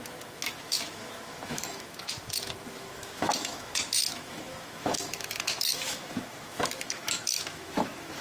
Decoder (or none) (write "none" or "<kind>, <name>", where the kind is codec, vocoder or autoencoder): autoencoder, DAC-VAE